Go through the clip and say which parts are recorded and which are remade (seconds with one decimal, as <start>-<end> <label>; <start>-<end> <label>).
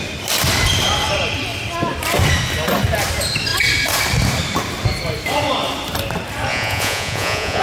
0.0-6.5 recorded; 6.5-7.6 remade